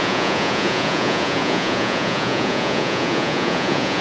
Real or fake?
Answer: fake